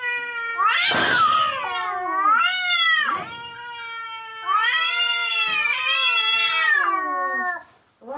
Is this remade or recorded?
recorded